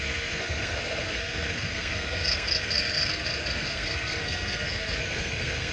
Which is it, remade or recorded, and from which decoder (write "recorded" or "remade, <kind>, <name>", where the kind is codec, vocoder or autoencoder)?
remade, codec, SNAC